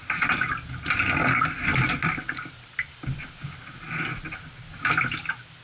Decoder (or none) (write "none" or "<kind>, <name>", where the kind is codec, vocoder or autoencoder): none